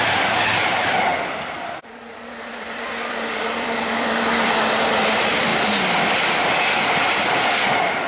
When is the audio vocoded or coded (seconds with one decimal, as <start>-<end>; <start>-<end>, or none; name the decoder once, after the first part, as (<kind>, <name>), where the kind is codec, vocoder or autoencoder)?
0.0-1.1 (vocoder, BigVGAN v2); 2.1-5.5; 7.1-8.1